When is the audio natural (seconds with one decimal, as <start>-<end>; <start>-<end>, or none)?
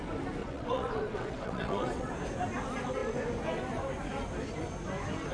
0.0-0.4; 2.1-5.3